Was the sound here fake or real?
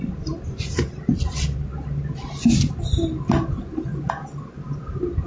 real